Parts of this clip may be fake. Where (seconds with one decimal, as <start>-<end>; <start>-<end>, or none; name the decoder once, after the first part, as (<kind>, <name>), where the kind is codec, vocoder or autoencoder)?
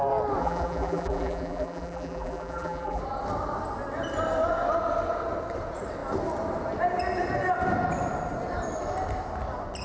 0.4-3.0 (vocoder, BigVGAN v2)